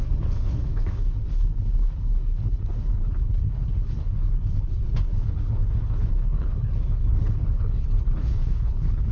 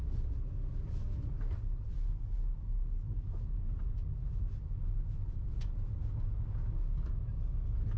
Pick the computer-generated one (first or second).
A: first